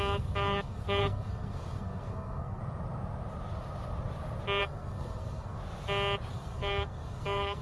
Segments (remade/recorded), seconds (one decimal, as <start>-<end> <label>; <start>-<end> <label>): 0.0-2.6 remade; 2.6-4.6 recorded; 4.6-5.6 remade; 5.6-6.3 recorded; 6.3-7.6 remade